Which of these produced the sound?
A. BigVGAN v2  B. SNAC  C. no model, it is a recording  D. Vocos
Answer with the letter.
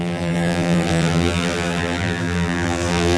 A